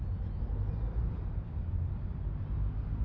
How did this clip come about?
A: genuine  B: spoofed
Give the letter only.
A